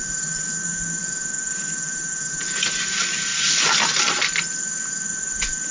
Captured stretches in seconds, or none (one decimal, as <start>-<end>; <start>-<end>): 0.0-5.7